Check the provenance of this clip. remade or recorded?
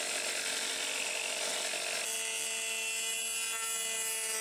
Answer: recorded